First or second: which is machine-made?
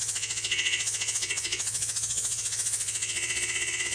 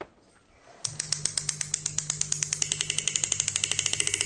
first